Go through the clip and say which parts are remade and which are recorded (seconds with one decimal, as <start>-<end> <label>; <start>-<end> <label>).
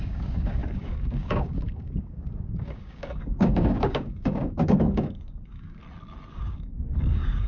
0.0-5.8 remade; 5.8-6.3 recorded; 6.3-7.5 remade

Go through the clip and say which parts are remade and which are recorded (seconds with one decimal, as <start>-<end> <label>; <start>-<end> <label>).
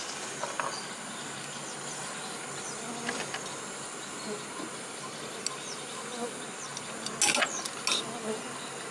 0.0-8.9 recorded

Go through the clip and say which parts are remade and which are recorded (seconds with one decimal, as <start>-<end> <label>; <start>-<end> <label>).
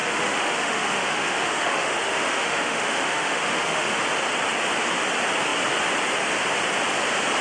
0.0-4.0 remade; 4.0-7.4 recorded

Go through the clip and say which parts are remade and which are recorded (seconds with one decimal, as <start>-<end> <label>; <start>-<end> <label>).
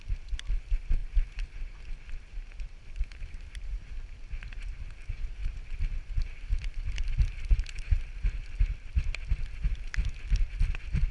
0.0-11.1 recorded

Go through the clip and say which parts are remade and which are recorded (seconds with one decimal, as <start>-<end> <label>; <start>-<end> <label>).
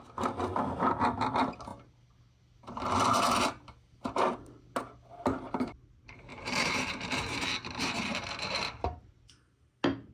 0.0-6.3 recorded; 6.3-9.7 remade; 9.7-10.1 recorded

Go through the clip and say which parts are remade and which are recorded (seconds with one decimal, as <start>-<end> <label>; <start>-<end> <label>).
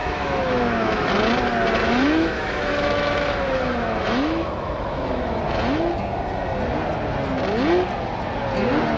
0.0-1.1 remade; 1.1-1.8 recorded; 1.8-5.4 remade; 5.4-9.0 recorded